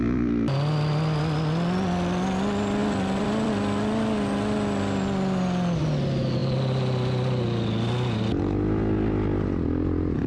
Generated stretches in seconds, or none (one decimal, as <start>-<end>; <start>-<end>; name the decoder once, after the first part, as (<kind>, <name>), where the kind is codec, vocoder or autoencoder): 2.8-3.5 (vocoder, BigVGAN v2)